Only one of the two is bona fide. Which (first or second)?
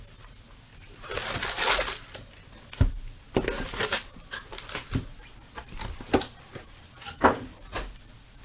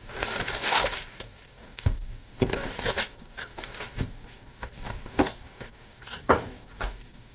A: first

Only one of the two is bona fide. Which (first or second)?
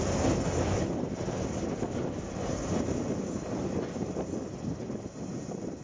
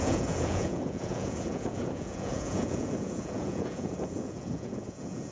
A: first